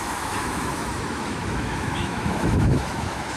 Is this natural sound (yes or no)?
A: no